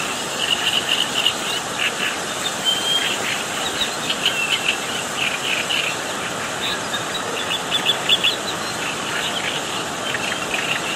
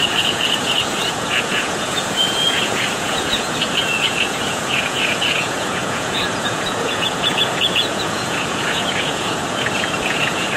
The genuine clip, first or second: first